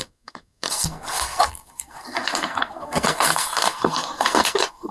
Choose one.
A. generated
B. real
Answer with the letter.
A